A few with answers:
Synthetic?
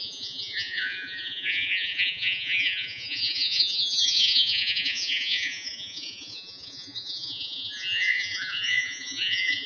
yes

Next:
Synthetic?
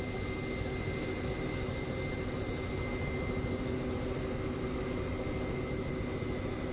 no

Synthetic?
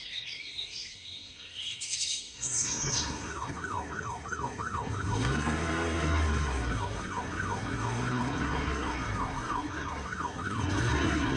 yes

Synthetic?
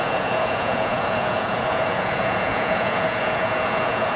yes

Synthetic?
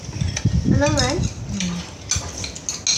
no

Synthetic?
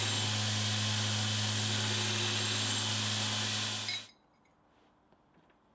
no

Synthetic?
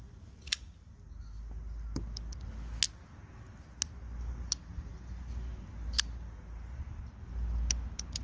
no